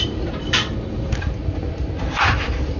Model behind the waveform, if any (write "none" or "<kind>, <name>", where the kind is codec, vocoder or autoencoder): vocoder, BigVGAN v2